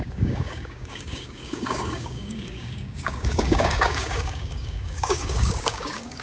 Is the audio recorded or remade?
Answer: remade